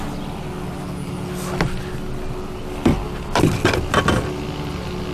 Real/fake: real